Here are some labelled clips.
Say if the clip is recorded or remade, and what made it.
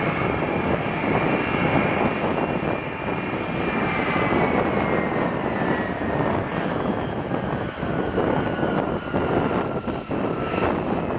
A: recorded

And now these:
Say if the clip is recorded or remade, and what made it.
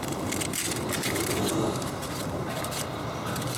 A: remade, vocoder, BigVGAN v2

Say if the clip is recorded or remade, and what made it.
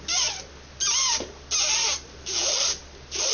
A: recorded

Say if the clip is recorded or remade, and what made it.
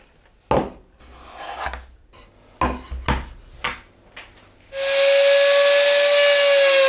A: recorded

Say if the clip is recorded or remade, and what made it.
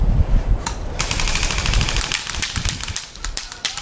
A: recorded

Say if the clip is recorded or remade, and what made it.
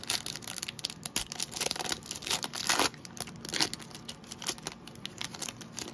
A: recorded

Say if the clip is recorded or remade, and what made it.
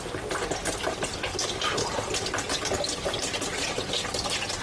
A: recorded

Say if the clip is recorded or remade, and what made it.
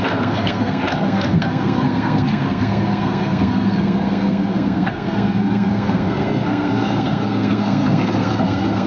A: remade, codec, SNAC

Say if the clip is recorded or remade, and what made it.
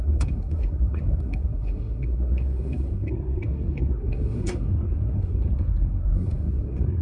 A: remade, codec, SNAC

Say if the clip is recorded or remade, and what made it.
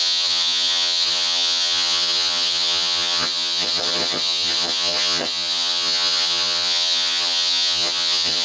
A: remade, vocoder, HiFi-GAN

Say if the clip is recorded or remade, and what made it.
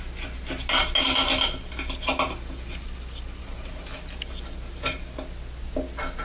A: recorded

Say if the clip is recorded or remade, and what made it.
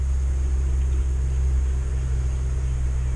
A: recorded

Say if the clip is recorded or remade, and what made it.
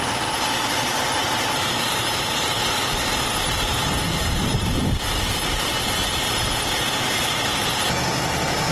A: recorded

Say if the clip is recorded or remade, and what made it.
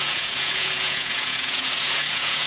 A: remade, vocoder, Vocos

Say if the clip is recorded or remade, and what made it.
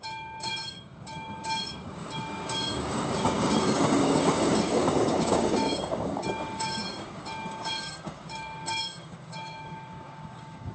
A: remade, codec, DAC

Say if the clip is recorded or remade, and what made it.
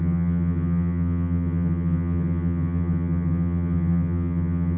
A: remade, vocoder, HiFi-GAN